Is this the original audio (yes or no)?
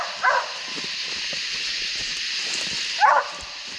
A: yes